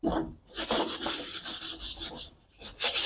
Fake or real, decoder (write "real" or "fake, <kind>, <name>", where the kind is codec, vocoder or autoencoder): real